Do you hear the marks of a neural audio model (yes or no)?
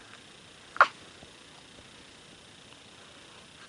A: no